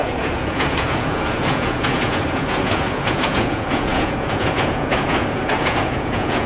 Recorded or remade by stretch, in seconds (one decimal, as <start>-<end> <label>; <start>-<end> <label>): 0.0-6.5 remade